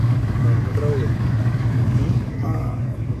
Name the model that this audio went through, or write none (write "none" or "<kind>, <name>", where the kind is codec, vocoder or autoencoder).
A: codec, DAC